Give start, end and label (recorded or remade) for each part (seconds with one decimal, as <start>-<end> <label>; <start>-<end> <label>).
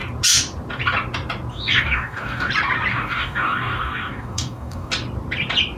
0.0-1.5 recorded; 1.5-2.5 remade; 2.5-2.9 recorded; 2.9-4.9 remade; 4.9-5.8 recorded